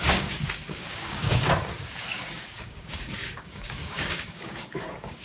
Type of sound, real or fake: fake